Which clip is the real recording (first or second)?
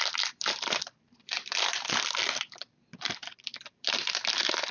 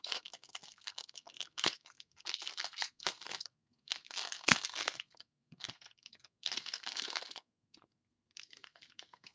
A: first